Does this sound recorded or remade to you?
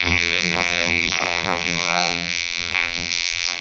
remade